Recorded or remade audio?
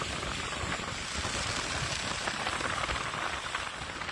recorded